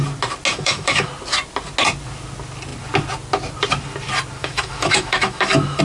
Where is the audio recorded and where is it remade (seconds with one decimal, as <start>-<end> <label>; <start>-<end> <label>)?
0.0-0.5 recorded; 0.5-1.1 remade; 1.1-4.4 recorded; 4.4-5.8 remade